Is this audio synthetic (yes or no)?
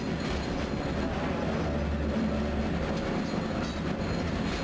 no